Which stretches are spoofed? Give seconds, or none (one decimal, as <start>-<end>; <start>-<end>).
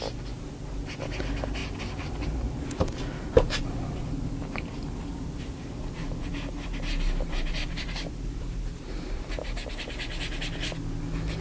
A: 7.6-9.3